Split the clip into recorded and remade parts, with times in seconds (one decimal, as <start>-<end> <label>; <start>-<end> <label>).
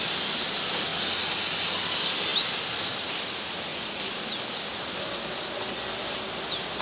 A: 0.0-6.8 recorded